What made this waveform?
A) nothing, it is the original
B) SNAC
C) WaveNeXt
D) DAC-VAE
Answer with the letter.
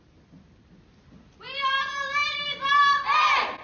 A